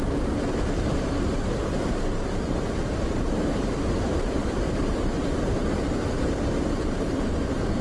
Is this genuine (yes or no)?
no